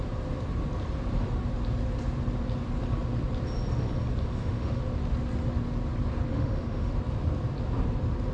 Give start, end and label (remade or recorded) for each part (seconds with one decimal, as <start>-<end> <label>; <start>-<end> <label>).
0.0-4.3 recorded; 4.3-4.8 remade; 4.8-6.3 recorded; 6.3-6.9 remade; 6.9-8.3 recorded